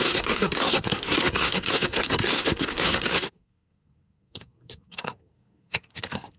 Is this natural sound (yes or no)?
no